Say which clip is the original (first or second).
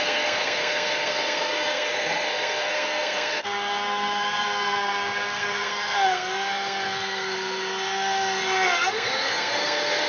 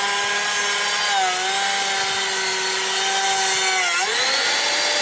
second